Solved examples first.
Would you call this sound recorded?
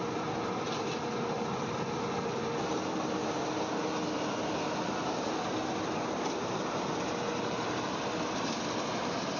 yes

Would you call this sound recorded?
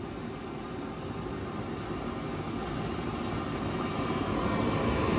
yes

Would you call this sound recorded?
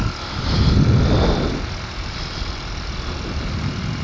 yes